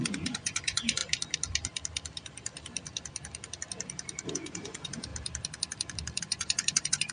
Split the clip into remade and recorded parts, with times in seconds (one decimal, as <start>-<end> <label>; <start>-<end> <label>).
0.0-1.0 remade; 1.0-4.3 recorded; 4.3-5.1 remade; 5.1-6.2 recorded; 6.2-7.1 remade